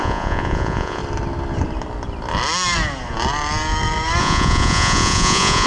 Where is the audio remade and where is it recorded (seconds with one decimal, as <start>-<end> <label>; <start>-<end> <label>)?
0.0-1.0 remade; 1.0-4.2 recorded; 4.2-5.7 remade